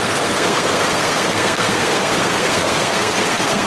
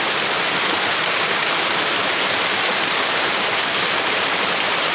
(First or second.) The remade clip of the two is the first